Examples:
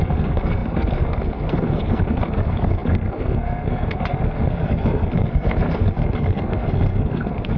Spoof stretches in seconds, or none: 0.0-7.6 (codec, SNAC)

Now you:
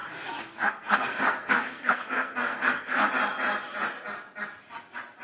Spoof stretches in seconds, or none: 0.0-3.1 (codec, SNAC)

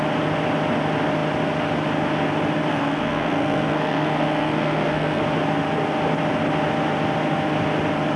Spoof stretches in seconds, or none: 2.7-5.2 (codec, SNAC)